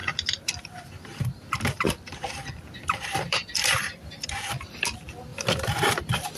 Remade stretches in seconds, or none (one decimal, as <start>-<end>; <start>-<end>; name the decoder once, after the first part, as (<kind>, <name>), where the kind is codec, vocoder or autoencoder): 0.0-5.3 (vocoder, BigVGAN v2); 6.0-6.4